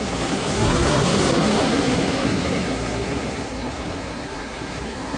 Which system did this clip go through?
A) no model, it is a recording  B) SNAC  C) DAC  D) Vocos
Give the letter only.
B